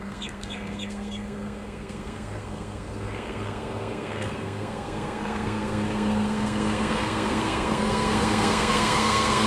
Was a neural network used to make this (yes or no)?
yes